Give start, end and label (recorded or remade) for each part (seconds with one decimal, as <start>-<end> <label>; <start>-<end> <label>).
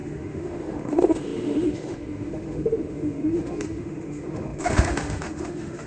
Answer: 0.0-5.9 remade